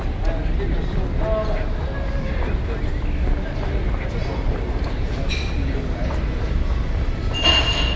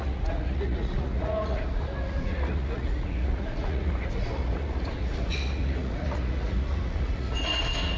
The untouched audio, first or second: first